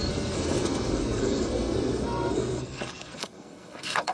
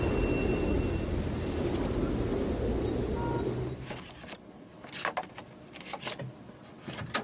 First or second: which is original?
second